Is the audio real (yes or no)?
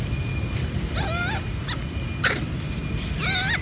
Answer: yes